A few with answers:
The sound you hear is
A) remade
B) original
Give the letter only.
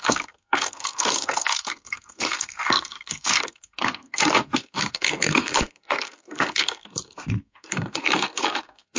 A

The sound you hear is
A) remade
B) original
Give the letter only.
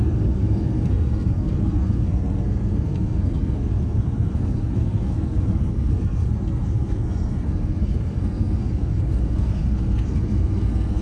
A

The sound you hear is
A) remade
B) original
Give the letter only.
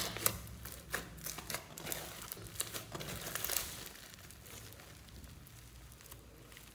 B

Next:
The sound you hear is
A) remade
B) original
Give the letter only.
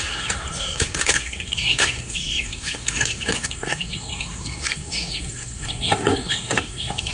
A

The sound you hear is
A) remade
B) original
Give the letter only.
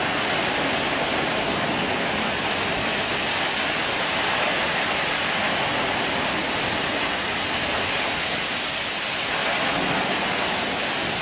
B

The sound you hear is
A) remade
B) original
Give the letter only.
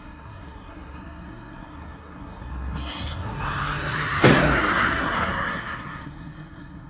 A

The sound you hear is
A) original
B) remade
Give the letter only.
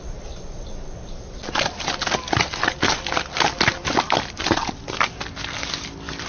A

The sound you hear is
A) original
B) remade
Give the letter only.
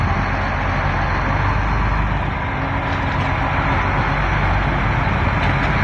A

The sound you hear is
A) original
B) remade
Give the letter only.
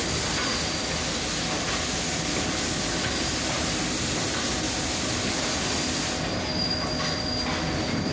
A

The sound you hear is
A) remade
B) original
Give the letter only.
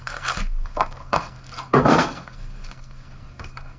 A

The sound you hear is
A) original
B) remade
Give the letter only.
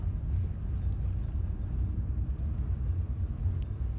A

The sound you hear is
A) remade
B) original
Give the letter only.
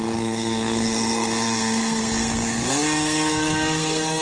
A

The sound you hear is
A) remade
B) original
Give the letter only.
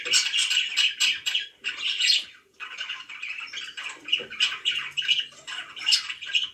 B